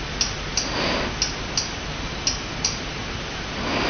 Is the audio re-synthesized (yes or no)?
no